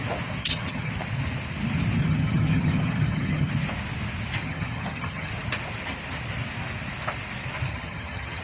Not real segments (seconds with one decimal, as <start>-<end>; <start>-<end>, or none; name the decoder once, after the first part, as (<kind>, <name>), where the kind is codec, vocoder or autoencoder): 0.4-0.9 (vocoder, HiFi-GAN); 2.0-3.5; 4.4-5.3; 7.7-8.4